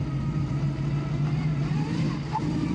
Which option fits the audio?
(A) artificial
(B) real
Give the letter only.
B